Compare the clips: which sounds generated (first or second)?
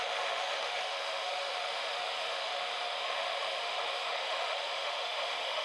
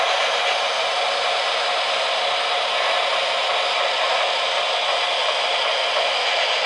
first